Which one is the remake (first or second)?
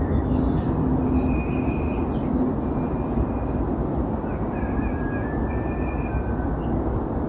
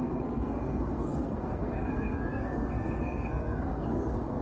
second